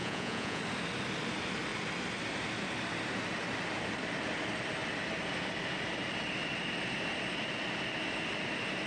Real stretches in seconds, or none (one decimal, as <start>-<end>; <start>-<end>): 0.6-8.9